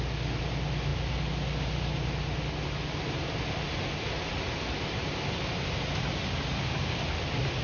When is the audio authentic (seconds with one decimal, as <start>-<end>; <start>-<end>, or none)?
0.0-7.6